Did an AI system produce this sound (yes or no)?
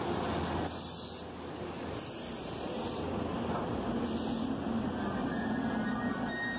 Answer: no